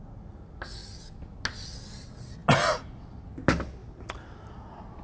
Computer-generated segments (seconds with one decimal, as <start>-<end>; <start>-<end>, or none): none